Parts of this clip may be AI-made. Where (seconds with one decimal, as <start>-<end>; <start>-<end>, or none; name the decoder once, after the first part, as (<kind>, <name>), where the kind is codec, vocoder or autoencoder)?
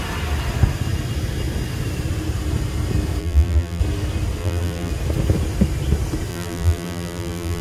3.2-3.8 (vocoder, BigVGAN v2); 4.4-4.9; 6.3-7.6